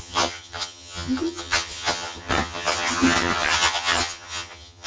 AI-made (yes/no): yes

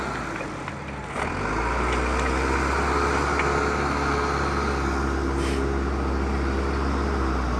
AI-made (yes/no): no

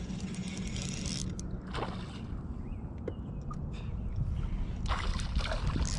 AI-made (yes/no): no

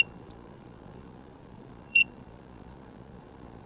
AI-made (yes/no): yes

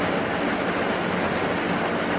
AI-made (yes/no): no